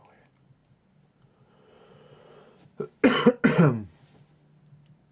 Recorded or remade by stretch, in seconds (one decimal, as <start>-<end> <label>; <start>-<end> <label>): 0.0-5.1 recorded